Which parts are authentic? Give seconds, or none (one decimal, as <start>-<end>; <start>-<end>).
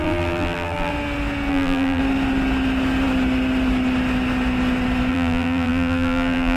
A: 0.9-1.5; 2.0-5.1